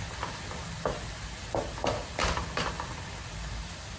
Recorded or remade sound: recorded